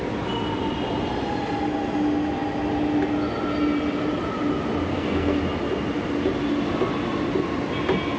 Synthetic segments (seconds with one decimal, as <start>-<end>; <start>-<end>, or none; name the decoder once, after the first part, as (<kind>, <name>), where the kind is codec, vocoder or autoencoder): 4.9-5.4 (codec, SNAC)